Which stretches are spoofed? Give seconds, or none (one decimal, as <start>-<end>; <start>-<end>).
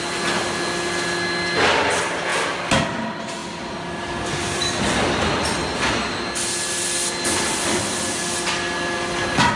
none